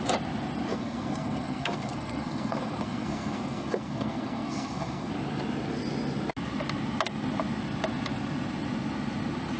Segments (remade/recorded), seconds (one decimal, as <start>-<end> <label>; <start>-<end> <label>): 0.0-0.7 recorded; 0.7-5.1 remade; 5.1-9.6 recorded